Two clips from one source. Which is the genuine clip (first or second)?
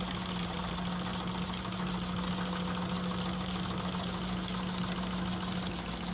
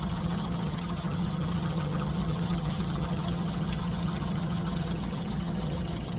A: first